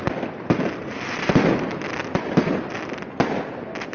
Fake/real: real